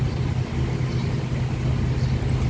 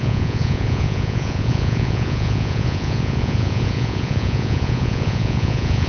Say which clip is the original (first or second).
first